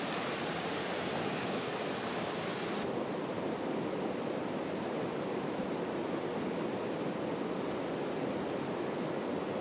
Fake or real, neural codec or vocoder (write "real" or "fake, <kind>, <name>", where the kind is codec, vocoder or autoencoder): real